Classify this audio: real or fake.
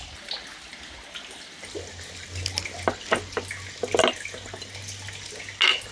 real